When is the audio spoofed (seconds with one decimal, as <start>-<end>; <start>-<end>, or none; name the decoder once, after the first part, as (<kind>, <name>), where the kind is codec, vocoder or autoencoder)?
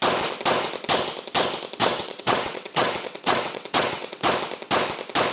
1.8-4.2 (vocoder, WaveNeXt)